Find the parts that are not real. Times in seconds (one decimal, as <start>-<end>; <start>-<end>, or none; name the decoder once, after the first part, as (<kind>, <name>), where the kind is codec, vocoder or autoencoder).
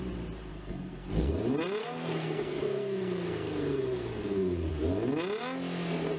0.5-1.4 (codec, SNAC); 1.8-4.7